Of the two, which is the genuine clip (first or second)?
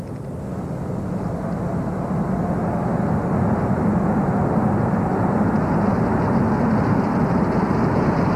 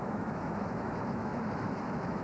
first